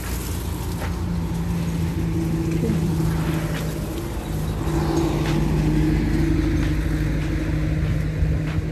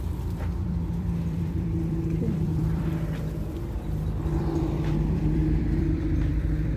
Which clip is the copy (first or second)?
second